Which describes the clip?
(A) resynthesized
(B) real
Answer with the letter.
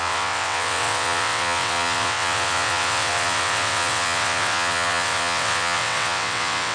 A